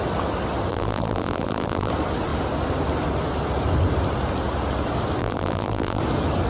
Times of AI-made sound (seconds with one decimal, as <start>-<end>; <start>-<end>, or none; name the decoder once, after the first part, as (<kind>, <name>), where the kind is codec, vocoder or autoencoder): 0.7-1.9 (vocoder, BigVGAN v2); 5.2-6.0